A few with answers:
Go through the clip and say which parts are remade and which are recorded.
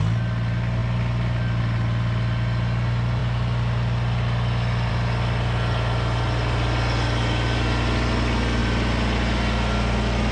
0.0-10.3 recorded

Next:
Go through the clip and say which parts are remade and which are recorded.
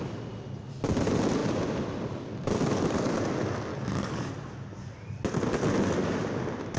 0.0-3.7 recorded; 3.7-4.3 remade; 4.3-6.8 recorded